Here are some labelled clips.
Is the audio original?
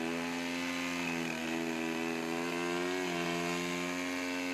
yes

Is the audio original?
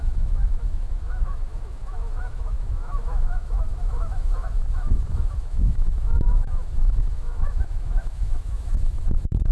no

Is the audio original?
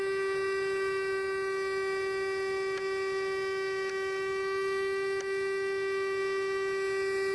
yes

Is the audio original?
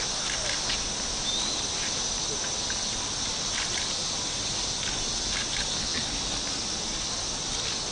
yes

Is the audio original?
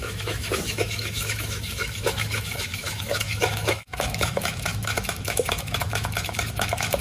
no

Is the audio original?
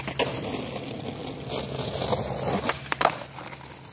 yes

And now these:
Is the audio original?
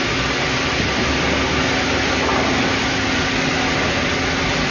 yes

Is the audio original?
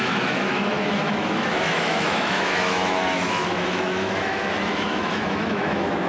no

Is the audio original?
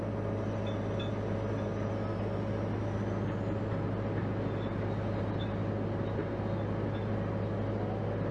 yes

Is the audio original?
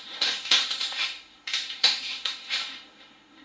no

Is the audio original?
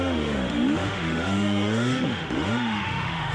no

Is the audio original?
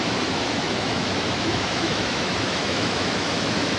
no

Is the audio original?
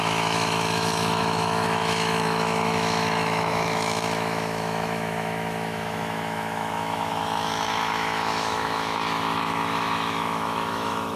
no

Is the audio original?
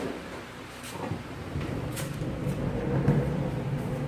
yes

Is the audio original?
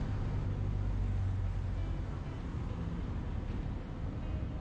yes